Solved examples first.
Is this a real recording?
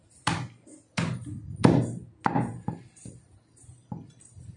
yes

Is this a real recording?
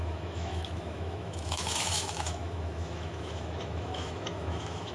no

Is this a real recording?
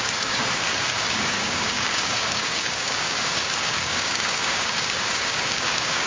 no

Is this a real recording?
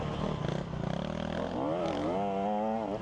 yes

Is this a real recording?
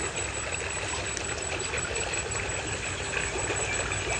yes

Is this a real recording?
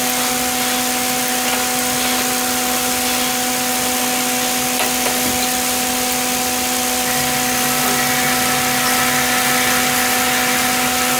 yes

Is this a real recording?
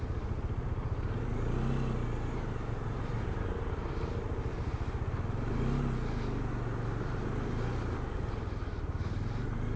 yes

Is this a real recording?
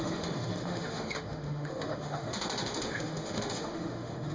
no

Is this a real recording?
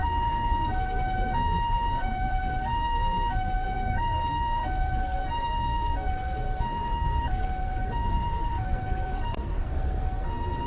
no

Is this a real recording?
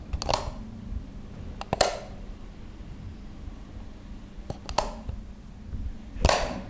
yes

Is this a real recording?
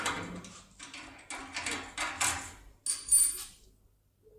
yes